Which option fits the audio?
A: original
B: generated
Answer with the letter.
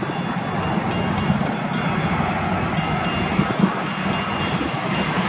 A